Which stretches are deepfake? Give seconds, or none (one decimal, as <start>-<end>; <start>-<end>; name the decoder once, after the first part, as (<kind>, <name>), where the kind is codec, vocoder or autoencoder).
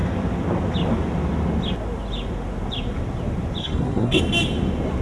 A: 3.6-4.2 (codec, SNAC)